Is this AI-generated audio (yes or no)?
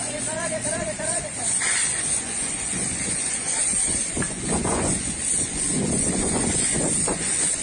yes